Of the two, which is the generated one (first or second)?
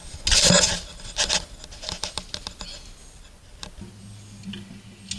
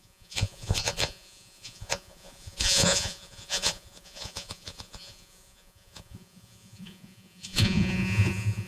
second